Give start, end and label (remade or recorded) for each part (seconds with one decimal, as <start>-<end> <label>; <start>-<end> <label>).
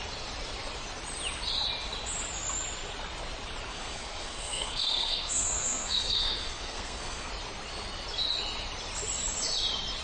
0.0-3.7 recorded; 3.7-7.3 remade; 7.3-10.0 recorded